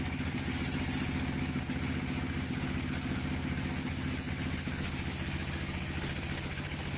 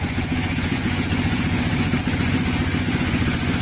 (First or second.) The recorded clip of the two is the first